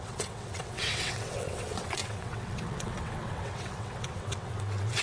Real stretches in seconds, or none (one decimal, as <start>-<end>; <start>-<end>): none